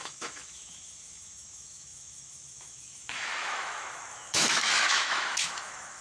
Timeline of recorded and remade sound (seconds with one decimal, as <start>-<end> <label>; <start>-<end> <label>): 0.0-6.0 remade